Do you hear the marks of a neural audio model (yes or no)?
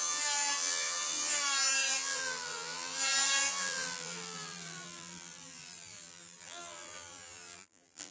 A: yes